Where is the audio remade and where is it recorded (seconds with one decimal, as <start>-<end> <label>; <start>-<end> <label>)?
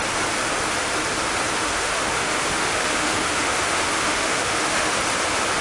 0.0-1.6 recorded; 1.6-5.0 remade; 5.0-5.6 recorded